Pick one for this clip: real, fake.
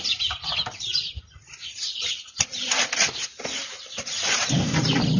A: real